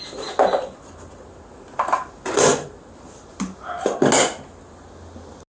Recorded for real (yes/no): yes